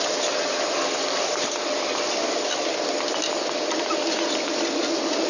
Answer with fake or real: real